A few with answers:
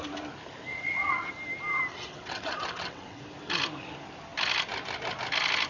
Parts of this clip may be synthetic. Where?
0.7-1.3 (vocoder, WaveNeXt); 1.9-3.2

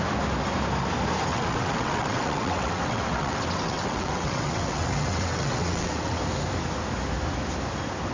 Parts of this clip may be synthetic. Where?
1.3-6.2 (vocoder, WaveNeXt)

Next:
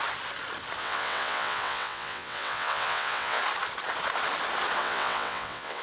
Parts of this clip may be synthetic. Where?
0.8-3.4 (vocoder, WaveNeXt); 4.8-5.8

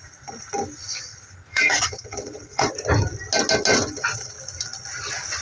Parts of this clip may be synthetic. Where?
1.5-2.7 (vocoder, WaveNeXt); 3.7-4.3

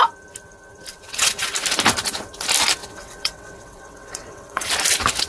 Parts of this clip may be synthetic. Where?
0.9-1.5 (vocoder, WaveNeXt); 2.8-4.7